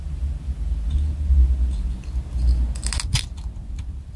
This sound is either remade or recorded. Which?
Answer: recorded